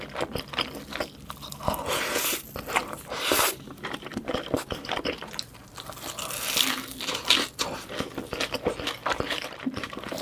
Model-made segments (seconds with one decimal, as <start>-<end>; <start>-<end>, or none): 2.8-5.3; 9.0-10.2